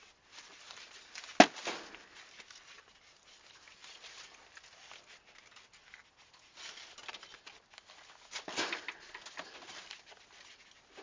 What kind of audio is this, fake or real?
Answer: real